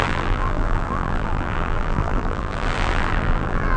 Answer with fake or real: fake